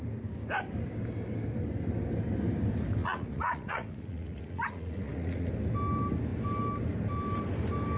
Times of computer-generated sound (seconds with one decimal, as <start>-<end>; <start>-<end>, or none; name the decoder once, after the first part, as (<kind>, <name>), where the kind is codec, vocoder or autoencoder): 3.0-5.5 (vocoder, Vocos)